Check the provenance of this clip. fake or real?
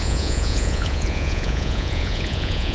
fake